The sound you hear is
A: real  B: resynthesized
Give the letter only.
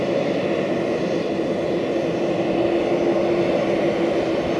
A